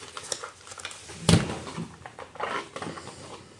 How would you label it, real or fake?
real